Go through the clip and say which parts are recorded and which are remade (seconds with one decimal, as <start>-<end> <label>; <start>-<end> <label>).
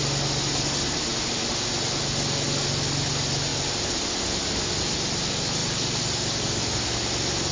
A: 0.0-7.5 recorded